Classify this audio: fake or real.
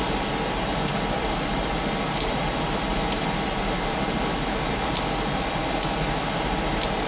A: real